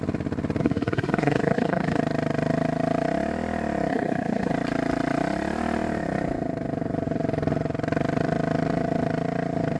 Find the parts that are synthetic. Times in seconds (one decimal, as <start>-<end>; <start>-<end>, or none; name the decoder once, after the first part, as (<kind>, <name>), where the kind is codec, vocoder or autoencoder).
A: 0.6-2.0 (codec, SNAC); 3.9-4.5